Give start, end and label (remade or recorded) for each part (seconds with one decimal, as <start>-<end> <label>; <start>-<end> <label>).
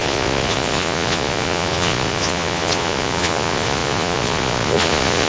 0.0-5.3 remade